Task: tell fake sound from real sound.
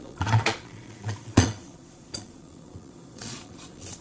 fake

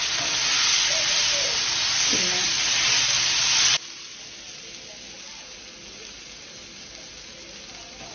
real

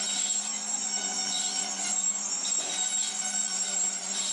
fake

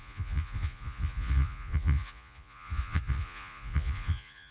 fake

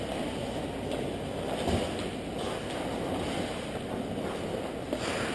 real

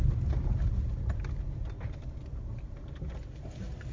real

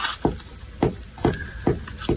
fake